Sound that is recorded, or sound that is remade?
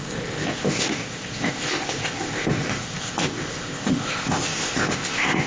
remade